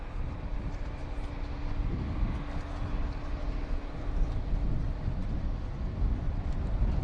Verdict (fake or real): real